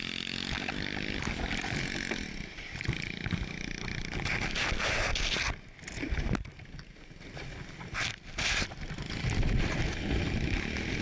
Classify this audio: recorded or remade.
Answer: recorded